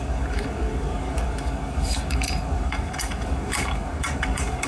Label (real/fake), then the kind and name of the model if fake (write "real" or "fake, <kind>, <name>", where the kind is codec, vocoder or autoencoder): fake, codec, DAC